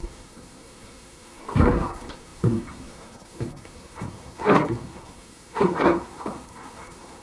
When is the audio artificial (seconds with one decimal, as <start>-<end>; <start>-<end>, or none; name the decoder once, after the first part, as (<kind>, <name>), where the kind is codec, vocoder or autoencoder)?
0.0-7.2 (codec, SNAC)